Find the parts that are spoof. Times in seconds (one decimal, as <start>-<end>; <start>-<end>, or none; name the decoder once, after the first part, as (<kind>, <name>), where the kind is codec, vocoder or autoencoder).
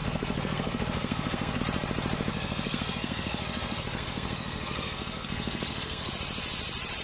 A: 0.0-1.6 (codec, SNAC); 2.3-6.1